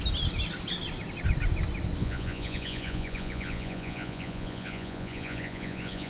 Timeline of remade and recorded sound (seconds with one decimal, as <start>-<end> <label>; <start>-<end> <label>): 0.0-2.0 recorded; 2.0-6.1 remade